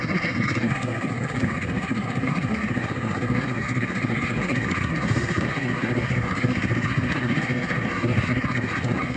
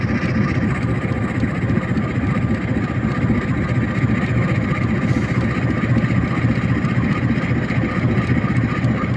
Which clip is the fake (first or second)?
first